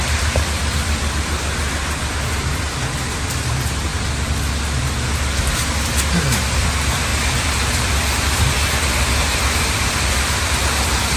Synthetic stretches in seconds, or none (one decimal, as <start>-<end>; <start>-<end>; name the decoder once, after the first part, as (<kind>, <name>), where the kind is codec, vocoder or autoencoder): 3.9-4.5 (vocoder, BigVGAN v2); 7.1-11.2